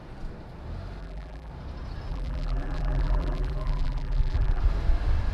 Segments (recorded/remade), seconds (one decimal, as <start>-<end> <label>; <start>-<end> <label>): 0.0-1.0 recorded; 1.0-1.5 remade; 1.5-2.1 recorded; 2.1-4.6 remade; 4.6-5.3 recorded